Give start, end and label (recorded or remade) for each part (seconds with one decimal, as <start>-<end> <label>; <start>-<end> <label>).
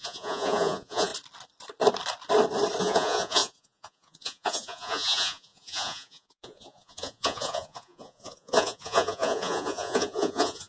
0.0-1.1 remade; 1.1-2.8 recorded; 2.8-10.7 remade